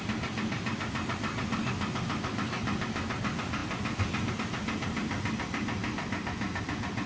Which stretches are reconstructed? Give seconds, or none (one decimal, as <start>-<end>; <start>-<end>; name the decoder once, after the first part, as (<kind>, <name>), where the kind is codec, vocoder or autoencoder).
none